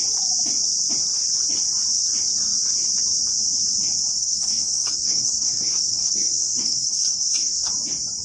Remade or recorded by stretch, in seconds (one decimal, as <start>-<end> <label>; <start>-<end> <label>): 0.0-4.1 recorded; 4.1-7.7 remade; 7.7-8.2 recorded